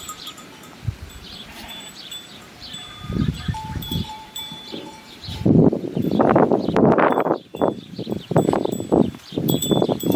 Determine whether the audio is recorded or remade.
remade